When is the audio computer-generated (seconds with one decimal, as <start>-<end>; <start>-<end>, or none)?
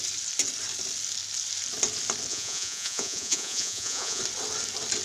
2.3-4.2